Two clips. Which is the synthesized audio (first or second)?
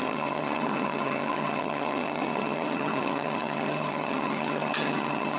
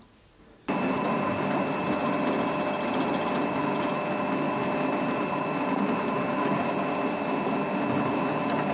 first